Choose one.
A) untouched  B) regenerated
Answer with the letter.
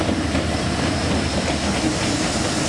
A